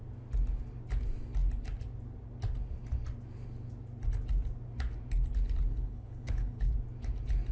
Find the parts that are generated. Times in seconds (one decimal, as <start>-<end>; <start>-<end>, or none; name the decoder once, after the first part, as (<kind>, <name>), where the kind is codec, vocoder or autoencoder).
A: 5.7-6.7 (codec, HILCodec)